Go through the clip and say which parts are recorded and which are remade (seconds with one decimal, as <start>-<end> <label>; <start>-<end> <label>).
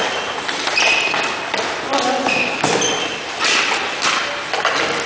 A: 0.0-5.1 recorded